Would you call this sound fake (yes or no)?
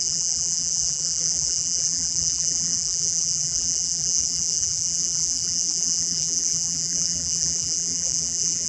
yes